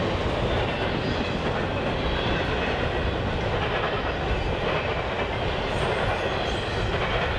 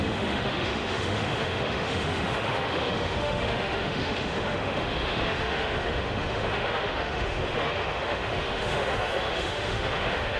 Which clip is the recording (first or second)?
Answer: first